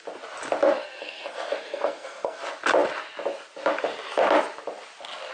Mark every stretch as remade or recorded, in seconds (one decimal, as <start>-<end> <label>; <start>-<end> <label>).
0.0-0.8 recorded; 0.8-2.4 remade; 2.4-5.3 recorded